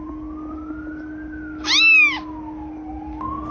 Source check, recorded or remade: recorded